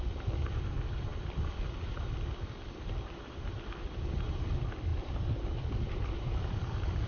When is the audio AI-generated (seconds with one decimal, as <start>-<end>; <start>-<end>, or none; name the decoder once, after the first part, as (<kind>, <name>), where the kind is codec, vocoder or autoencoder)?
none